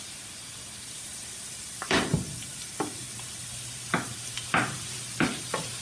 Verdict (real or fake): fake